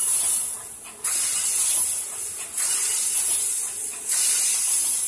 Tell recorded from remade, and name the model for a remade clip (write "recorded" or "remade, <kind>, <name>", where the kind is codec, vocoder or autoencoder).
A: recorded